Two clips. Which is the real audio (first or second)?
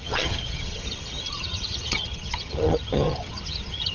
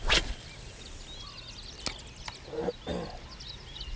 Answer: second